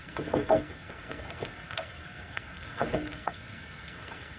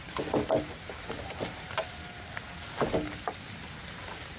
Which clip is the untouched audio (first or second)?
second